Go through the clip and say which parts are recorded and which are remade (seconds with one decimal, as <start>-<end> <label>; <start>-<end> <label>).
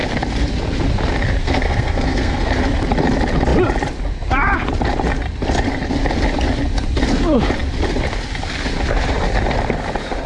0.0-1.4 recorded; 1.4-2.5 remade; 2.5-10.3 recorded